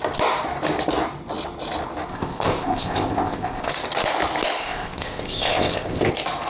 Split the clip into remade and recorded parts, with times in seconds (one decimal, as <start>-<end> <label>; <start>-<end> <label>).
0.0-2.1 recorded; 2.1-3.7 remade; 3.7-4.6 recorded; 4.6-6.1 remade; 6.1-6.5 recorded